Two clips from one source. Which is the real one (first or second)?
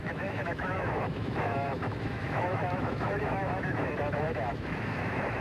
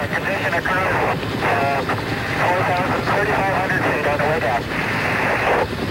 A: second